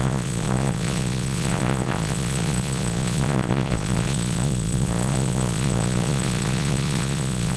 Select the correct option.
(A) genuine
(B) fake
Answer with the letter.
B